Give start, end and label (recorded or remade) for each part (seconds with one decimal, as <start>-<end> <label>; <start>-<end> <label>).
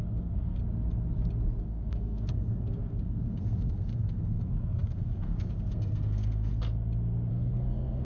0.0-0.6 remade; 0.6-1.6 recorded; 1.6-6.5 remade; 6.5-7.3 recorded; 7.3-8.0 remade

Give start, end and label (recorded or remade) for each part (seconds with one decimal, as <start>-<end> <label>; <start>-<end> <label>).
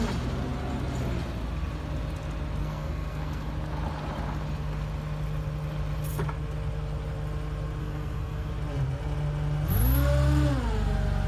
0.0-2.6 recorded; 2.6-3.5 remade; 3.5-7.8 recorded; 7.8-8.5 remade; 8.5-11.3 recorded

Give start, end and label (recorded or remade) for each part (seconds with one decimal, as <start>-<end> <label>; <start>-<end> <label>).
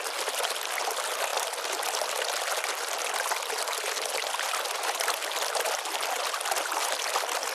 0.0-7.5 recorded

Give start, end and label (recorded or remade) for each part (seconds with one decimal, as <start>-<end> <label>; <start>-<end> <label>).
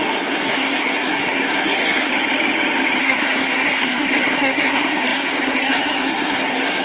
0.0-2.1 remade; 2.1-3.0 recorded; 3.0-6.8 remade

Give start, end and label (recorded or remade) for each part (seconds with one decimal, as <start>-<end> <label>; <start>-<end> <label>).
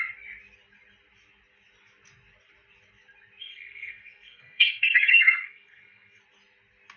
0.0-3.4 recorded; 3.4-6.2 remade; 6.2-7.0 recorded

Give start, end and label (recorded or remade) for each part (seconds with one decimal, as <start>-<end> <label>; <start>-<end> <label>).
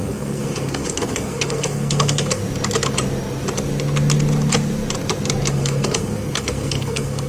0.0-2.4 remade; 2.4-5.5 recorded; 5.5-7.3 remade